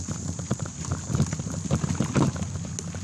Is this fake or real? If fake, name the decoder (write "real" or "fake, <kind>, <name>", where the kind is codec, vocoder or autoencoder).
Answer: real